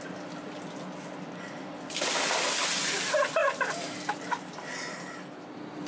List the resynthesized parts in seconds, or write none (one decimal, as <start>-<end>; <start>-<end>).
none